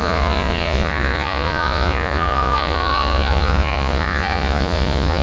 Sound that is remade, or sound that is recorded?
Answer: remade